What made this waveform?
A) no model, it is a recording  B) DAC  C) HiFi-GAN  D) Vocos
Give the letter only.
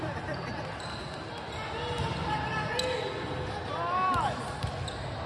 A